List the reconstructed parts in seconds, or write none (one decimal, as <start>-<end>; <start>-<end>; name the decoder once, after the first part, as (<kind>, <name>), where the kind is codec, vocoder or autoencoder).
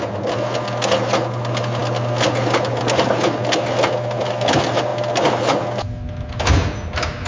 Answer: none